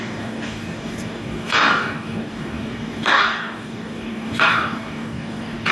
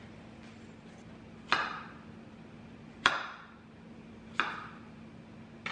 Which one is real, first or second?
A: second